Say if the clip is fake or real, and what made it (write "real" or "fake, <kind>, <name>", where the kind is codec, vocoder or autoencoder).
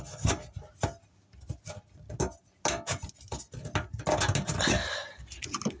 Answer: real